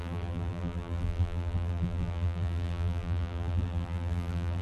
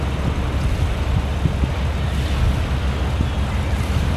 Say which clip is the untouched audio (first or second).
second